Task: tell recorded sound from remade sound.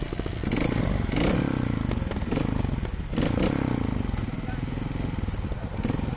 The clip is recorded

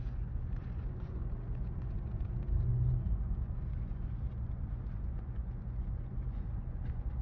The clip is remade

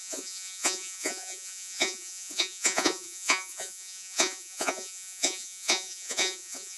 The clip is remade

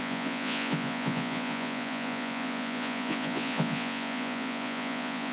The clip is remade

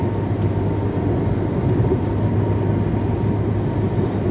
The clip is recorded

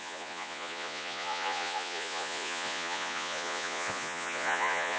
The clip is remade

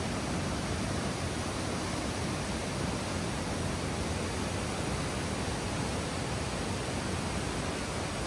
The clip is recorded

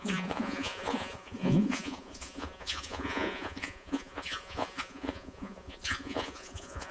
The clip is remade